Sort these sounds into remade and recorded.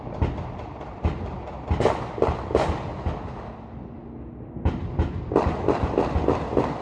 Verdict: recorded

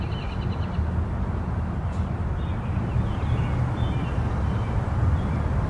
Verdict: recorded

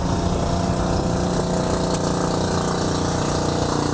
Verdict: recorded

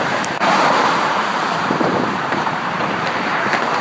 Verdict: remade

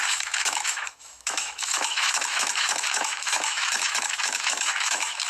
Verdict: remade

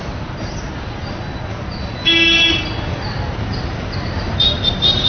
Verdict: recorded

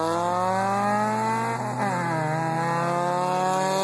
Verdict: recorded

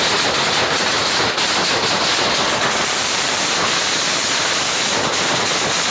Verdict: recorded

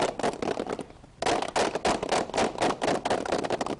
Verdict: recorded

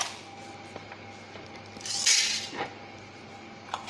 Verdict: recorded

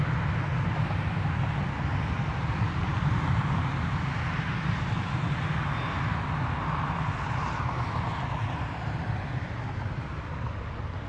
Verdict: recorded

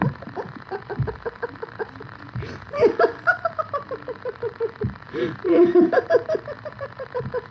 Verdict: remade